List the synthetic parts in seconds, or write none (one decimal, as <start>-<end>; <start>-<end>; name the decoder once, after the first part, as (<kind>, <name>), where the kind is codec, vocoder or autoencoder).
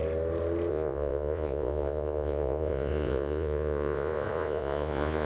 0.7-5.3 (vocoder, Vocos)